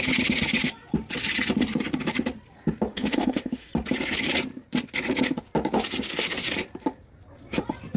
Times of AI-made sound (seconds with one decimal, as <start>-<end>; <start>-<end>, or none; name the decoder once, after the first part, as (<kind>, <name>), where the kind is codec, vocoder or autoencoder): 2.9-3.7 (autoencoder, DAC-VAE)